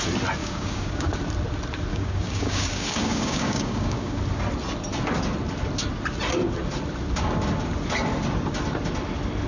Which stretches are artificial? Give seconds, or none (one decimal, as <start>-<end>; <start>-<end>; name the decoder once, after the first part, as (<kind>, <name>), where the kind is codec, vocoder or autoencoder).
0.4-1.1 (codec, DAC); 1.9-4.2